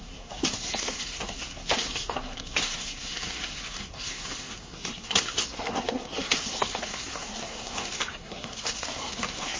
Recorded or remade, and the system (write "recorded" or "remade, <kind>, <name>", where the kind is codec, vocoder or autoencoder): remade, codec, SNAC